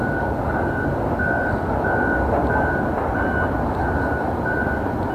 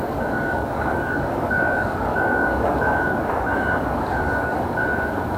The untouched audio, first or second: first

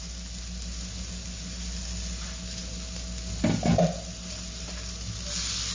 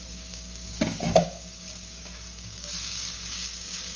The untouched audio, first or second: first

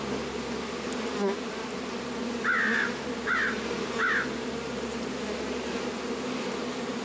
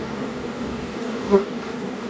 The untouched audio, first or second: first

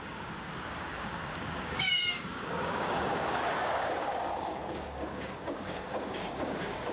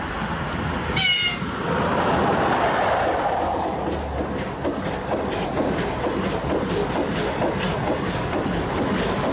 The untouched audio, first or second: second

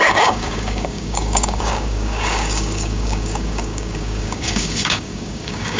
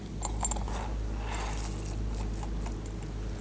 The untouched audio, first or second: second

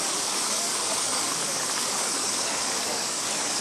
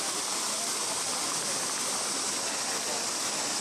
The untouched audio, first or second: second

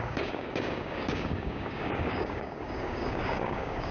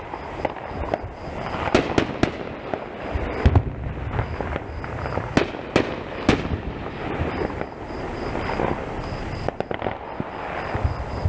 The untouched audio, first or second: second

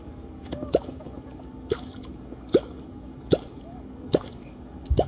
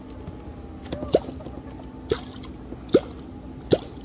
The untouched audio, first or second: second